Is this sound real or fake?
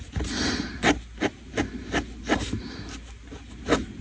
real